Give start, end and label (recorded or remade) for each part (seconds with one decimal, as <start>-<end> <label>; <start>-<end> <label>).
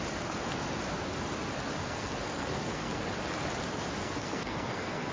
0.0-1.8 recorded; 1.8-3.0 remade; 3.0-4.0 recorded; 4.0-5.1 remade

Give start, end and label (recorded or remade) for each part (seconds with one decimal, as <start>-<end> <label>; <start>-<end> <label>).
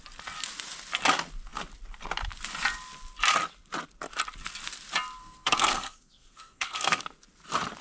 0.0-5.2 recorded; 5.2-7.0 remade; 7.0-7.8 recorded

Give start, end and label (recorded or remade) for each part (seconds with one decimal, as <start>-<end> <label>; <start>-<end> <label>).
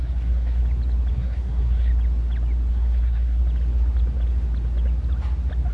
0.0-0.6 remade; 0.6-1.1 recorded; 1.1-1.9 remade; 1.9-2.7 recorded; 2.7-3.4 remade; 3.4-5.7 recorded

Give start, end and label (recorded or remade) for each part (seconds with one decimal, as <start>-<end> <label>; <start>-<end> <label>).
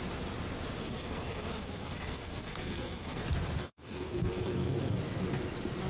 0.0-0.8 recorded; 0.8-3.2 remade; 3.2-3.6 recorded; 3.6-5.0 remade; 5.0-5.9 recorded